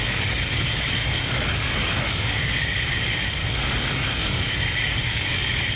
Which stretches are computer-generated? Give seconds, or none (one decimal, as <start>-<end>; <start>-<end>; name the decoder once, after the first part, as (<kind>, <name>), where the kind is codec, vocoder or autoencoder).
0.0-3.4 (codec, DAC); 3.9-5.8